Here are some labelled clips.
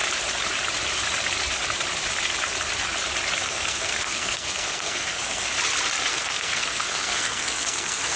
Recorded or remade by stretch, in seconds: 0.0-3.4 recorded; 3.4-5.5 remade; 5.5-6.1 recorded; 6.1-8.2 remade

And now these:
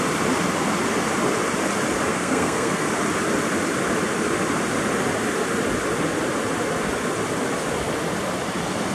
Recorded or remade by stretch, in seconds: 0.0-2.1 recorded; 2.1-2.9 remade; 2.9-8.9 recorded

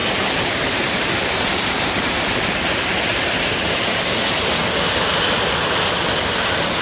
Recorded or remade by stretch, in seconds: 0.0-2.2 remade; 2.2-6.8 recorded

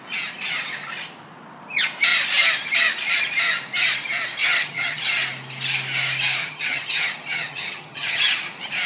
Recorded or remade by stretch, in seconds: 0.0-4.4 recorded; 4.4-5.0 remade; 5.0-6.4 recorded; 6.4-8.3 remade; 8.3-8.9 recorded

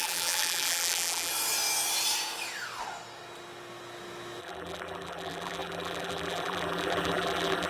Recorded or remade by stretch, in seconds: 0.0-1.3 remade; 1.3-4.4 recorded; 4.4-7.7 remade